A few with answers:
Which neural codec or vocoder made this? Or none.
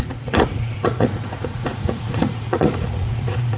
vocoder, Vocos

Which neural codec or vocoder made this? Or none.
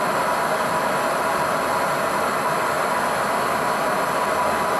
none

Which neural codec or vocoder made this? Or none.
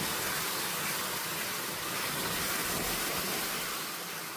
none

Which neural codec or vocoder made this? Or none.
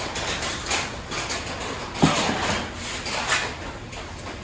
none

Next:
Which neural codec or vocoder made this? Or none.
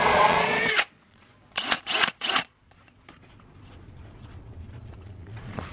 vocoder, Vocos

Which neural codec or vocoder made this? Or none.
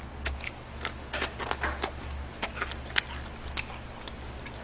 none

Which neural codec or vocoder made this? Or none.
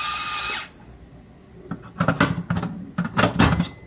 none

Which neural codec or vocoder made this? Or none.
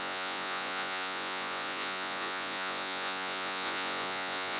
vocoder, Vocos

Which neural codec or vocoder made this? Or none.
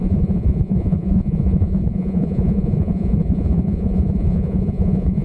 vocoder, Vocos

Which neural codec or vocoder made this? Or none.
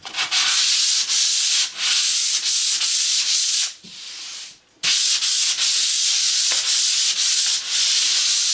none